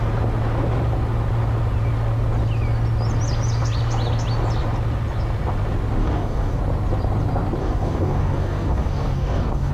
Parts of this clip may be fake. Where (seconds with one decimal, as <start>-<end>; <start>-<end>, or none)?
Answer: 6.0-6.6; 7.6-9.7